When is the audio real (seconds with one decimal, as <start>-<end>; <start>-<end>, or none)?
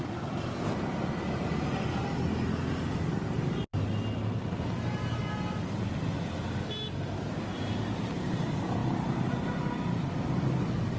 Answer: 0.0-8.8; 9.6-11.0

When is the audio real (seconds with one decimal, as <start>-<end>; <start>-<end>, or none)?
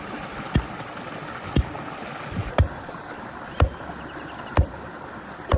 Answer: 0.0-5.6